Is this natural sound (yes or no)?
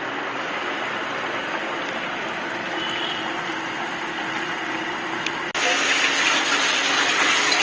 yes